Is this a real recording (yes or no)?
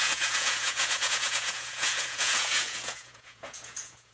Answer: no